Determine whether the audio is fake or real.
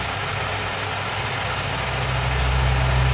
real